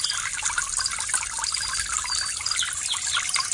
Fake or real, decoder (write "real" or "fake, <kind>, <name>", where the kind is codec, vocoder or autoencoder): real